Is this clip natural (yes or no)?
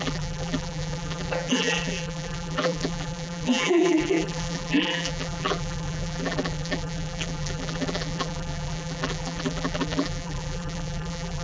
no